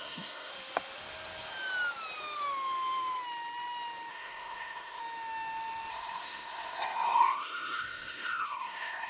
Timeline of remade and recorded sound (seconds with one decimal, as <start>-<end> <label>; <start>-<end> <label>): 0.0-0.5 remade; 0.5-4.1 recorded; 4.1-5.0 remade; 5.0-5.9 recorded; 5.9-9.1 remade